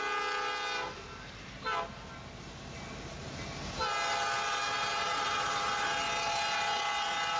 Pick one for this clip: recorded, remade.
recorded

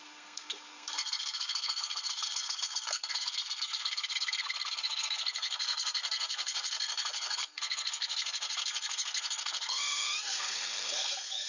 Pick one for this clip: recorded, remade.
remade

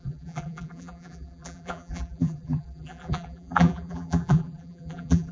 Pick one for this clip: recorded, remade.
remade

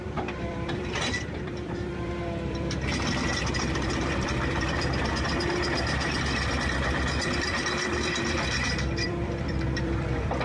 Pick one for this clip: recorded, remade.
remade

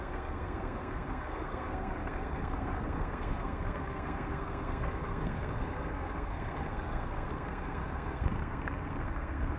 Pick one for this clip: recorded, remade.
remade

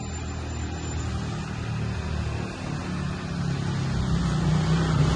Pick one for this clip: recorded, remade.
recorded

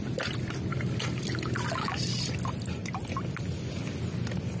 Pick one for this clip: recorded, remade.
recorded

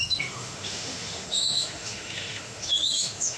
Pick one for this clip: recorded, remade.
remade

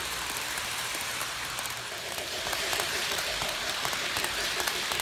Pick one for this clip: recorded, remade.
remade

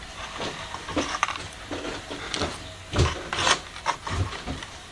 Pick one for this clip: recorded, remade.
recorded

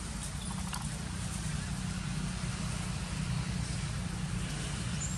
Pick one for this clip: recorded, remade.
recorded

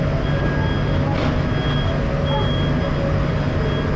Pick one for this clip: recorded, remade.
recorded